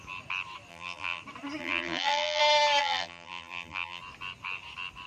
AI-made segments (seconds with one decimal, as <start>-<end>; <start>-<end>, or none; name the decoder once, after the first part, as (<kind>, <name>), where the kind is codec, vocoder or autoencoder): 0.7-1.2 (vocoder, BigVGAN v2); 1.6-2.4; 2.8-4.0